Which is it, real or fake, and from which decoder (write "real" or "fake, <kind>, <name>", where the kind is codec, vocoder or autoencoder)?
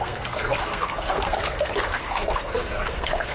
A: fake, codec, SNAC